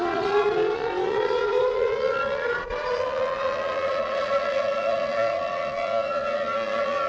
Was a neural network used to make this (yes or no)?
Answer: yes